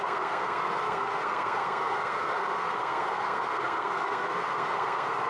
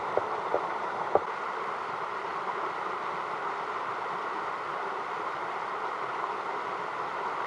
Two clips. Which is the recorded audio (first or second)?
second